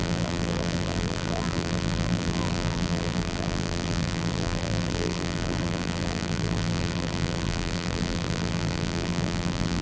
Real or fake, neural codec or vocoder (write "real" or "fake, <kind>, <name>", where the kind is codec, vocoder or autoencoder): fake, vocoder, BigVGAN v2